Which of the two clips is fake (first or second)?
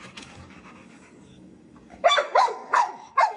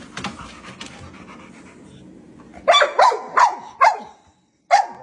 first